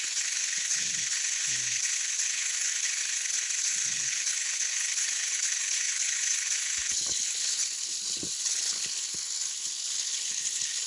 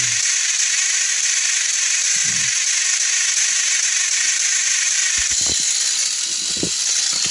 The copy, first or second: first